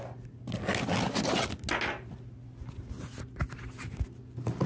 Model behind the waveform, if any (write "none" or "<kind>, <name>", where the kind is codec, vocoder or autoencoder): none